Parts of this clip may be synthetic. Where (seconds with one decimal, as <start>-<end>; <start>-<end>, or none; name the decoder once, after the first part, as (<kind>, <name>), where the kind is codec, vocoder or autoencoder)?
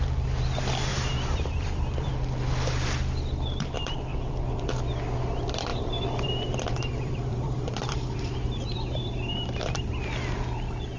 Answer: 0.9-2.1 (vocoder, BigVGAN v2); 4.1-4.7; 5.7-9.9